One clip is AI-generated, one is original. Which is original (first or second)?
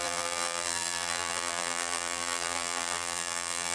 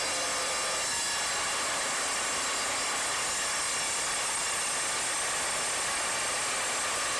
second